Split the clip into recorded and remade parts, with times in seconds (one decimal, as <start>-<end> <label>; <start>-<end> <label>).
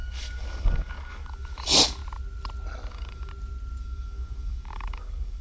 0.0-2.0 remade; 2.0-2.9 recorded; 2.9-3.3 remade; 3.3-3.8 recorded; 3.8-5.4 remade